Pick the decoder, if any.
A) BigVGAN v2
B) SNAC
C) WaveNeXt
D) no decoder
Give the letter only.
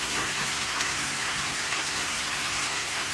B